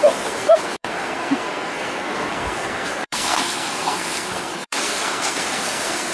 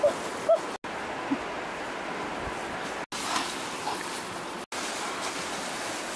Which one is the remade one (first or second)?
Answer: first